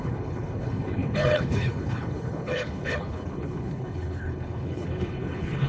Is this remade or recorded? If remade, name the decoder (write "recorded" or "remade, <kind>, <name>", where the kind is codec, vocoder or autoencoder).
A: remade, codec, HILCodec